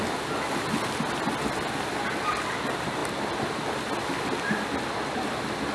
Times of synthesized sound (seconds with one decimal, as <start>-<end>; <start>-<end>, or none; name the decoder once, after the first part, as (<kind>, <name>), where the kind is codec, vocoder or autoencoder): none

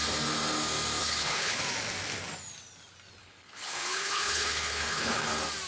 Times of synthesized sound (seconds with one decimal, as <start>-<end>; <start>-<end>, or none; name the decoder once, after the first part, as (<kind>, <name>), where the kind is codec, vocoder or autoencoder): 1.0-1.6 (codec, HILCodec); 3.2-5.3

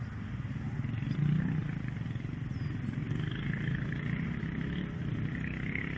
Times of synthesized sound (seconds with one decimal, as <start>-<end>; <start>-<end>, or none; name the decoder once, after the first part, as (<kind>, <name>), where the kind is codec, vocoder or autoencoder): none

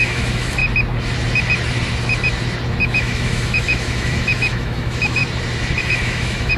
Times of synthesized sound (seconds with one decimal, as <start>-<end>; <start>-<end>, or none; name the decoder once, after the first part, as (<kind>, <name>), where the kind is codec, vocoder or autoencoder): 0.0-0.6 (autoencoder, DAC-VAE); 2.8-5.2; 5.8-6.6

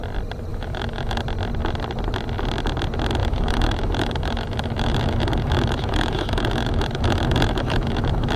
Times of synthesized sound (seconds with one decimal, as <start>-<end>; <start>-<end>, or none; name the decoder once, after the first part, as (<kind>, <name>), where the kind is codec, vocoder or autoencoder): 0.5-1.2 (autoencoder, DAC-VAE); 3.2-8.4

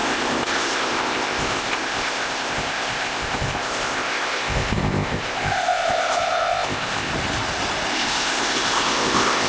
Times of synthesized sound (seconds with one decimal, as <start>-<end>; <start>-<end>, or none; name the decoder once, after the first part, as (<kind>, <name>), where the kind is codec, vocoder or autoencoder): 0.0-7.1 (codec, ZipCodec); 7.9-9.5

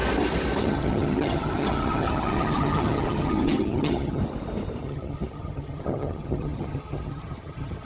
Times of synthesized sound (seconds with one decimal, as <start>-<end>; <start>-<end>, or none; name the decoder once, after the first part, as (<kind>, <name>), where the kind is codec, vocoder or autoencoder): 0.6-4.2 (vocoder, HiFi-GAN); 4.8-7.8

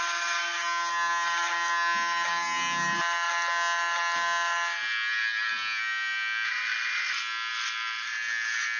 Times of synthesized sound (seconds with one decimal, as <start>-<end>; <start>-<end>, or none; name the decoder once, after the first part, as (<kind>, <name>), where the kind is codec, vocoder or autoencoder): none